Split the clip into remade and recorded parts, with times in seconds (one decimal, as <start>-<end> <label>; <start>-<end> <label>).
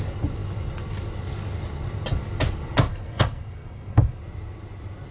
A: 0.0-2.9 recorded; 2.9-4.2 remade; 4.2-5.1 recorded